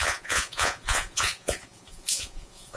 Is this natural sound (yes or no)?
no